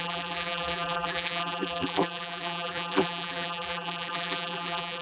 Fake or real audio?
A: fake